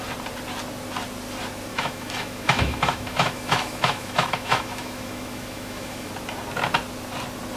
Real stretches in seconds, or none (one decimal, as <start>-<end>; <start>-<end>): 0.0-1.7; 6.1-7.6